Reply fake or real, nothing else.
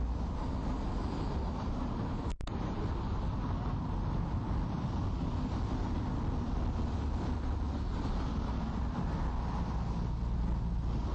real